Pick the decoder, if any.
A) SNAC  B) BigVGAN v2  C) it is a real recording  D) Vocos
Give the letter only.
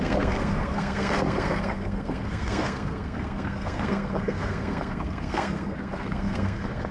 A